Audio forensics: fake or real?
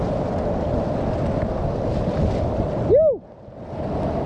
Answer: real